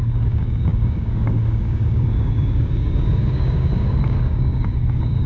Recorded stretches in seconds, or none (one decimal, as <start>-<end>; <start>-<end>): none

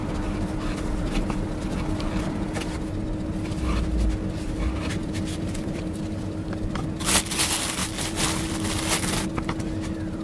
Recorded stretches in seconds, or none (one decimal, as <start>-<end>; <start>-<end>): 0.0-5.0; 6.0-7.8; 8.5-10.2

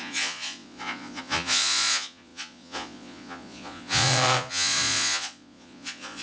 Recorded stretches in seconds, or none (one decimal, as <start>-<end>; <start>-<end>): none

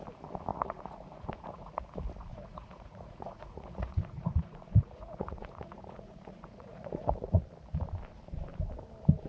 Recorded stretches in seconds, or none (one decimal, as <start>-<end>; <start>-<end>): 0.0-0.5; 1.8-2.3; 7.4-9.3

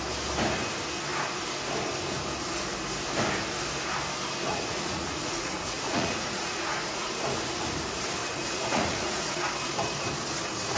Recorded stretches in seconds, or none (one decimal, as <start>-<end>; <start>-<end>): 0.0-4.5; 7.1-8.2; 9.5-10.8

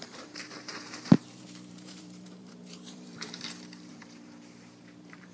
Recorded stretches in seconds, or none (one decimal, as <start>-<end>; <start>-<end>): none

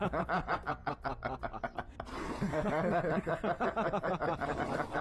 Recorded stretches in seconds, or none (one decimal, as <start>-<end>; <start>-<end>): 0.0-5.0